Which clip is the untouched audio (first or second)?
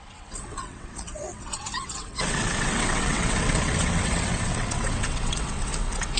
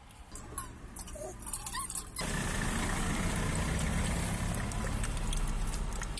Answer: second